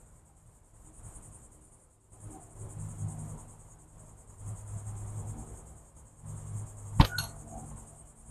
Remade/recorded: recorded